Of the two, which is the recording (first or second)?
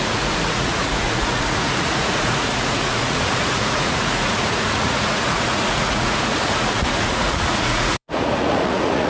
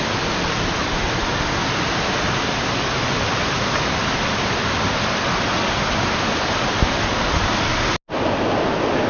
second